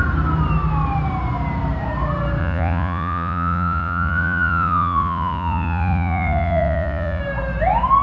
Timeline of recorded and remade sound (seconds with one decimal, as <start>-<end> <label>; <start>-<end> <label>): 0.0-2.4 recorded; 2.4-7.2 remade; 7.2-8.0 recorded